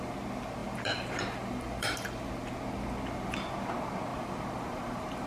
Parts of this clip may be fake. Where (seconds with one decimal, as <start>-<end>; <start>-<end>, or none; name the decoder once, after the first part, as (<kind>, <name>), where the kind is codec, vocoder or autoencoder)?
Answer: 0.6-2.3 (vocoder, BigVGAN v2); 4.1-5.3